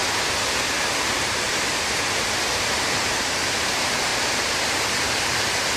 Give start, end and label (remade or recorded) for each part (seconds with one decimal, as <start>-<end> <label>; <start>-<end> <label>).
0.0-1.7 recorded; 1.7-5.8 remade